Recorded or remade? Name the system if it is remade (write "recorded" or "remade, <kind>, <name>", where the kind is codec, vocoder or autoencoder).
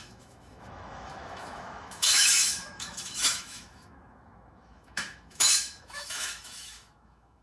remade, autoencoder, DAC-VAE